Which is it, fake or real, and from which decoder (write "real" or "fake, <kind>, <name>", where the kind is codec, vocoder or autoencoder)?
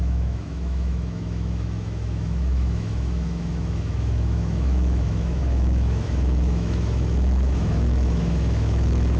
fake, autoencoder, DAC-VAE